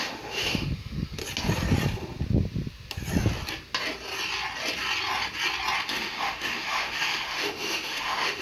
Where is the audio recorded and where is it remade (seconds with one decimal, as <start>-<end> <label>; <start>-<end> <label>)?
0.0-1.2 remade; 1.2-5.9 recorded; 5.9-8.4 remade